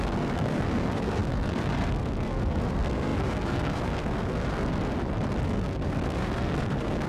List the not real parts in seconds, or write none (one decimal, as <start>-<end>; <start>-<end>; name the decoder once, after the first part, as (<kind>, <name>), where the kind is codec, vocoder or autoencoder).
0.0-4.7 (codec, SNAC); 5.4-7.1